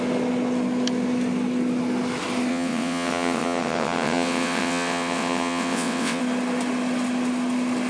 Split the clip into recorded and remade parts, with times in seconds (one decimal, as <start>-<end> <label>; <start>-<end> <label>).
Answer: 0.0-2.5 recorded; 2.5-6.2 remade; 6.2-7.9 recorded